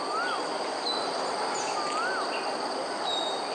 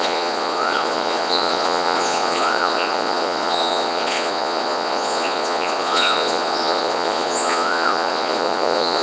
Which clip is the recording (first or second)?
first